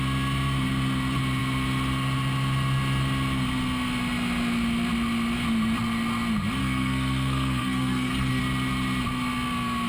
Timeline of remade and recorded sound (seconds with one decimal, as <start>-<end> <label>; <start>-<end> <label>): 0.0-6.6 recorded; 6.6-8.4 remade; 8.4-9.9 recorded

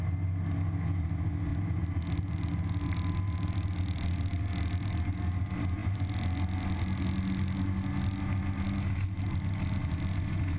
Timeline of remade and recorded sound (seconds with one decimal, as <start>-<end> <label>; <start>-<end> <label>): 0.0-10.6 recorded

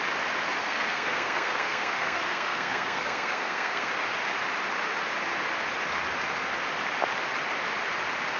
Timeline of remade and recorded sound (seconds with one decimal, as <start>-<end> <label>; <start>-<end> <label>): 0.0-0.6 recorded; 0.6-3.9 remade; 3.9-8.4 recorded

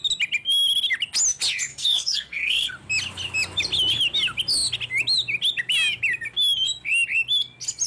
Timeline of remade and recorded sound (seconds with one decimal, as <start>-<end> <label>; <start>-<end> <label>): 0.0-1.7 recorded; 1.7-2.7 remade; 2.7-7.9 recorded

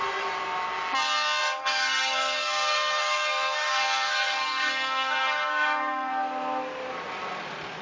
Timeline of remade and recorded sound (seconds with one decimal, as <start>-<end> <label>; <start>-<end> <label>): 0.0-1.4 recorded; 1.4-6.1 remade; 6.1-7.8 recorded